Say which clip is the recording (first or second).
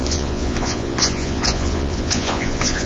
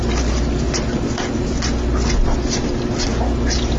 second